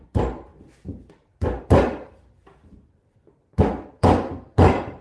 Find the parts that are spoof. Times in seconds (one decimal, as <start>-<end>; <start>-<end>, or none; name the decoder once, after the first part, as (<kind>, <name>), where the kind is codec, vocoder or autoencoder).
0.0-0.5 (vocoder, BigVGAN v2); 1.6-5.0